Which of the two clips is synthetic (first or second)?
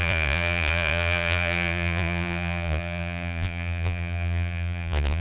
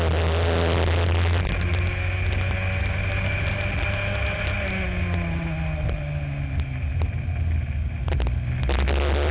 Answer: first